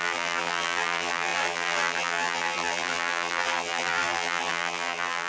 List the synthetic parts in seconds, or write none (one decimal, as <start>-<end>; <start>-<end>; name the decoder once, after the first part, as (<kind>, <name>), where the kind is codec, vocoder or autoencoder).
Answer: 0.0-5.3 (vocoder, BigVGAN v2)